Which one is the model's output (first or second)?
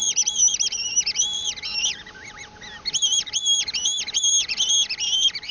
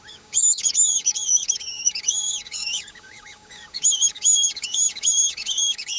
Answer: second